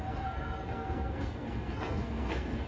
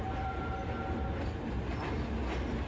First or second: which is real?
second